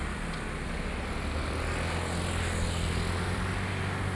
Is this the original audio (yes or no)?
yes